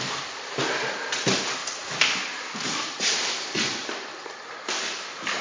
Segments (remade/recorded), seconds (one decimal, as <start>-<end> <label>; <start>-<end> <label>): 0.0-5.4 recorded